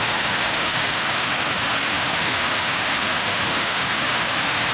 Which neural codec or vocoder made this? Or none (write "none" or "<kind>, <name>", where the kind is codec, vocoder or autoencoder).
autoencoder, DAC-VAE